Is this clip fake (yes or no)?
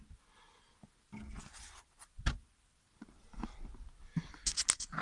no